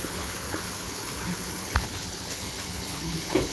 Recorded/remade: remade